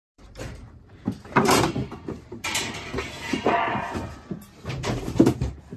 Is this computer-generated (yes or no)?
yes